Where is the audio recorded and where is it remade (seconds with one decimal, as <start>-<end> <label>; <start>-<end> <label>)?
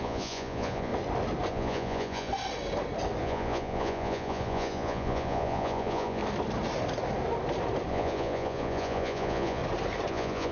0.0-0.9 remade; 0.9-1.5 recorded; 1.5-2.3 remade; 2.3-3.2 recorded; 3.2-6.2 remade; 6.2-7.9 recorded; 7.9-9.6 remade; 9.6-10.1 recorded; 10.1-10.5 remade